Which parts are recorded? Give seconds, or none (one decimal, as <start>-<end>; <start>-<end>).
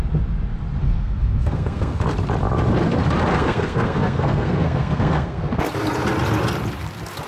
0.0-0.8; 2.0-3.3; 5.7-7.3